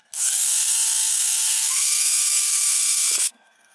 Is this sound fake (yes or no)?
yes